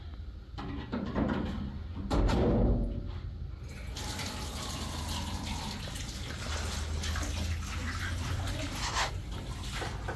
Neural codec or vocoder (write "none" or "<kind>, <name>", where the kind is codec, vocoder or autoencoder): none